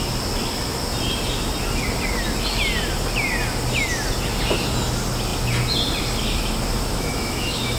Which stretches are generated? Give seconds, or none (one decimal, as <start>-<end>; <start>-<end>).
6.9-7.8